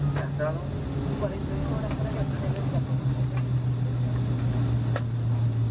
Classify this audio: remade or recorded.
recorded